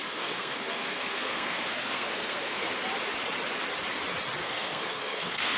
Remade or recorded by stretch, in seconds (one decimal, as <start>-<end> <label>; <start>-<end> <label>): 0.0-2.7 remade; 2.7-4.4 recorded; 4.4-5.6 remade

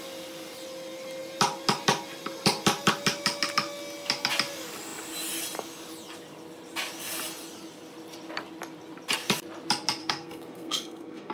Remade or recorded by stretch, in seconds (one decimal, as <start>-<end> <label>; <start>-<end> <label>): 0.0-10.0 recorded; 10.0-11.3 remade

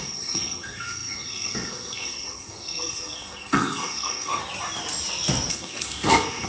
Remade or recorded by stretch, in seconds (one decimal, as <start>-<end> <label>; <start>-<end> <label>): 0.0-4.4 remade; 4.4-5.5 recorded; 5.5-6.5 remade